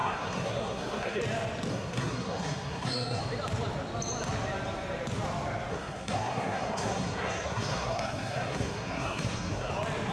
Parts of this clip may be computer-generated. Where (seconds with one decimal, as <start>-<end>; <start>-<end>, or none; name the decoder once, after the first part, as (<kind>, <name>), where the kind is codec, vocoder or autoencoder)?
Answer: 0.0-1.2 (codec, SNAC); 1.7-3.2; 5.7-9.7